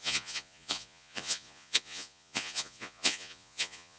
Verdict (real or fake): fake